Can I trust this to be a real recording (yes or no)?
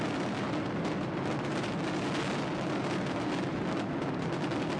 yes